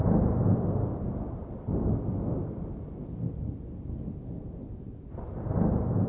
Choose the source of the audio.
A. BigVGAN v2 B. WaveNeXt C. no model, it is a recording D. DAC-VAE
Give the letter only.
C